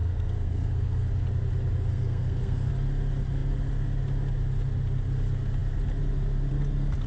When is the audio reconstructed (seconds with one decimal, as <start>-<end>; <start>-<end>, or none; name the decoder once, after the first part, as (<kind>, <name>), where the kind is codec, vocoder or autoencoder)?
0.0-1.1 (codec, SNAC); 1.9-2.7